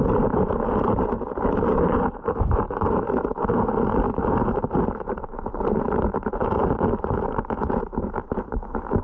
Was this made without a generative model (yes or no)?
no